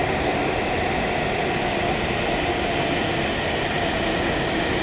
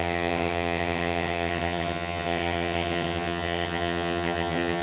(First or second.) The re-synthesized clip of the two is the second